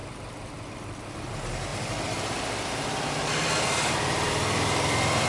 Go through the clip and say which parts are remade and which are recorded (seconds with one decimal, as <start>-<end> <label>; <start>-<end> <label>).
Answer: 0.0-0.7 remade; 0.7-1.7 recorded; 1.7-5.3 remade